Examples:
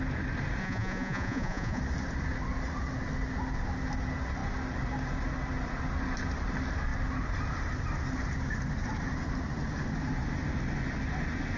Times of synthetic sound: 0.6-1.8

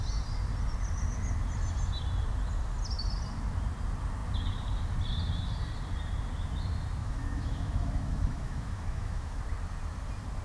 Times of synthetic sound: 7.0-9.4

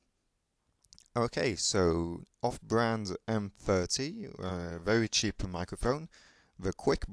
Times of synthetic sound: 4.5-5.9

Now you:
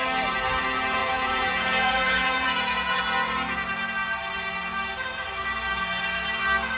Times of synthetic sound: 1.0-3.0